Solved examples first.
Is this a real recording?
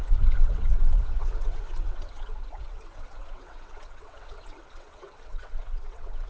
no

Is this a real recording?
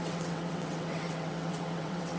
no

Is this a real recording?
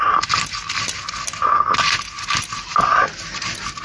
yes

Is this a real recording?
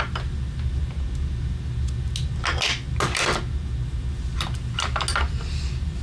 yes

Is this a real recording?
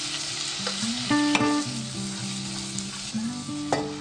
yes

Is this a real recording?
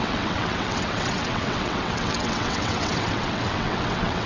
no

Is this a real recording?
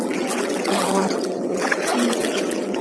no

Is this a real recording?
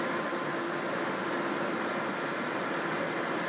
yes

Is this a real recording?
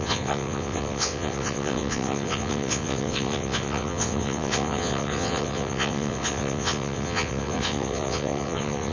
no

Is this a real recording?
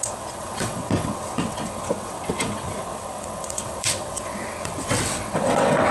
no